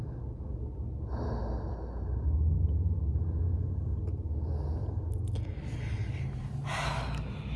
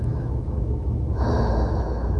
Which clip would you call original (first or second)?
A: first